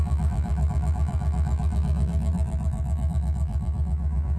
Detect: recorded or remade remade